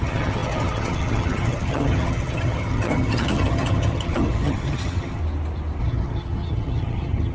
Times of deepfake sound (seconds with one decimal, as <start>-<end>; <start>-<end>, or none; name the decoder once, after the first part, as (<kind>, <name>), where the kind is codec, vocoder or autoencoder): 0.0-5.2 (vocoder, HiFi-GAN); 5.8-7.3